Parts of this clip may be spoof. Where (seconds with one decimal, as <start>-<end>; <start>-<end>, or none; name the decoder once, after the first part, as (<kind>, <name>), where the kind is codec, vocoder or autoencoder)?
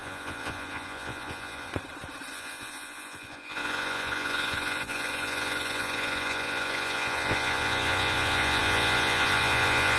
0.0-1.7 (vocoder, Vocos); 2.3-10.0